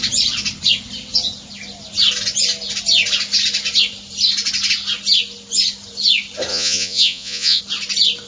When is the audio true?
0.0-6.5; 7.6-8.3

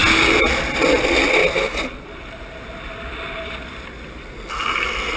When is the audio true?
0.0-5.2

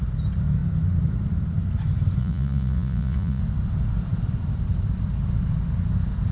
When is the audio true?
0.0-2.2; 3.4-6.3

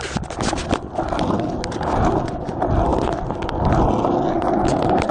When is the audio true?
0.0-5.1

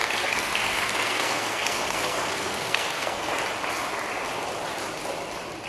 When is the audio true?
3.4-5.7

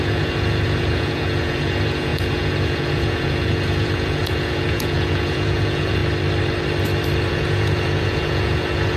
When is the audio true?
6.0-7.3

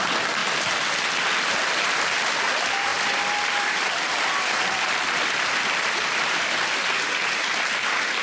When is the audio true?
0.0-2.9; 6.4-8.2